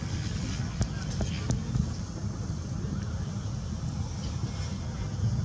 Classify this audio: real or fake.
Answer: real